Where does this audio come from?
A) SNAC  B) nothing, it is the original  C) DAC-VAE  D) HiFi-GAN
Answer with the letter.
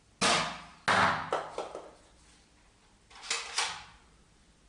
B